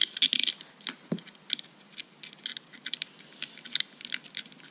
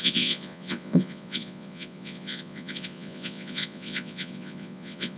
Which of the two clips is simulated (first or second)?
second